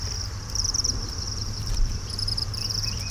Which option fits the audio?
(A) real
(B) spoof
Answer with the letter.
B